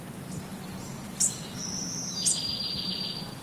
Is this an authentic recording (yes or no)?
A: yes